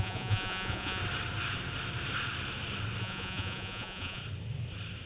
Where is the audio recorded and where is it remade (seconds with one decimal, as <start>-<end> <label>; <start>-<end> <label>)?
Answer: 0.0-1.0 remade; 1.0-3.0 recorded; 3.0-4.2 remade; 4.2-5.1 recorded